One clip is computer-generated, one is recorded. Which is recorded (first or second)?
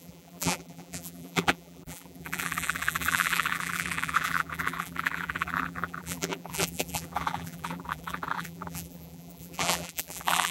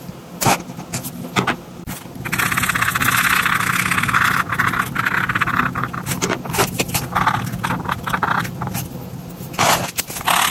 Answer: second